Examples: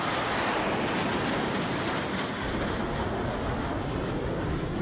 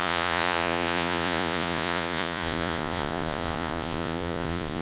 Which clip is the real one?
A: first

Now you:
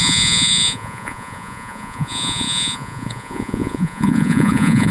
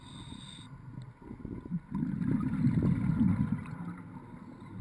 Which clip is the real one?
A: second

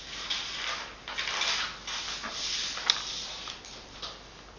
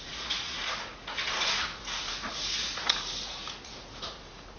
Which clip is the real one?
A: first